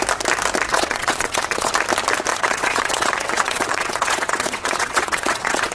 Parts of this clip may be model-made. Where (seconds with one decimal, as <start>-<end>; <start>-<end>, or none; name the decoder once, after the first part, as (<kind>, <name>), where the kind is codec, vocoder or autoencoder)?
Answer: 0.7-1.7 (vocoder, WaveNeXt); 2.3-5.7